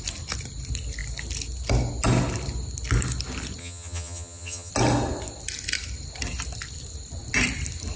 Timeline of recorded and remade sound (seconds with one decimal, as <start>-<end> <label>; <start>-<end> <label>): 0.0-3.6 recorded; 3.6-4.7 remade; 4.7-8.0 recorded